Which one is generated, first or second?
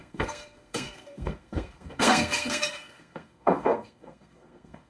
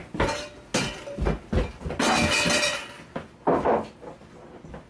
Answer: first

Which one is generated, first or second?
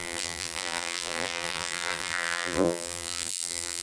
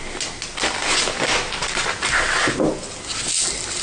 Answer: first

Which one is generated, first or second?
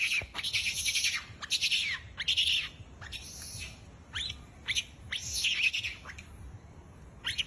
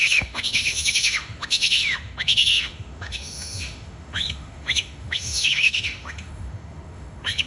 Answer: second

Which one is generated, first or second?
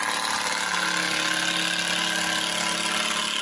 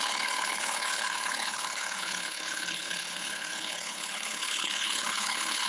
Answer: second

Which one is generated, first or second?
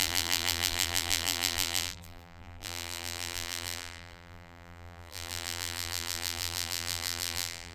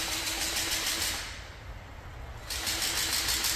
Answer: first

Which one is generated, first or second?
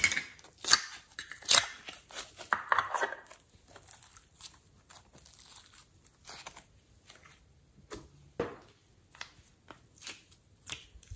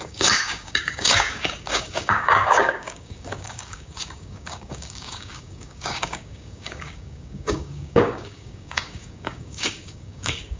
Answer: second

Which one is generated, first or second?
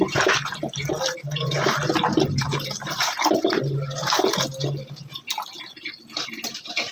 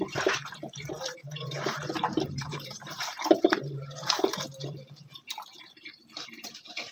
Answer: second